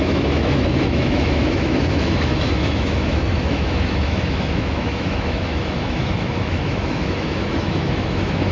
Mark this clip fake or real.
fake